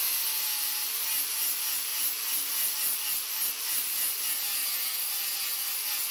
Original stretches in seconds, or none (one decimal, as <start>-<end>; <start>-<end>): 0.0-6.1